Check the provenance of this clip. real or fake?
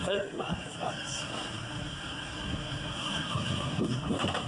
fake